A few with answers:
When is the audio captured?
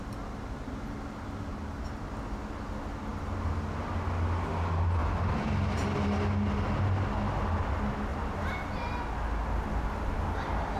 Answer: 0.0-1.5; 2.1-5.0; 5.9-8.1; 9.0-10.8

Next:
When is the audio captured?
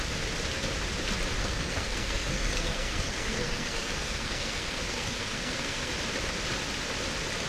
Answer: 0.0-1.4; 5.9-7.5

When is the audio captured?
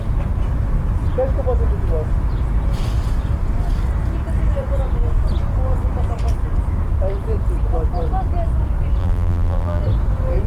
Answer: 0.0-9.0; 9.8-10.5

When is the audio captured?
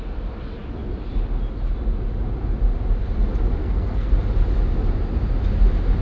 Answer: 0.0-3.6; 4.1-6.0